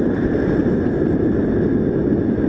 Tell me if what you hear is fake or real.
real